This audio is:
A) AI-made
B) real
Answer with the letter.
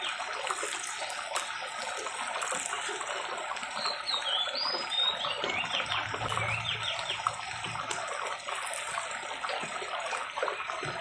B